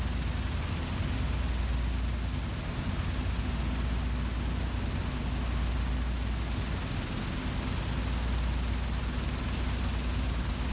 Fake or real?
real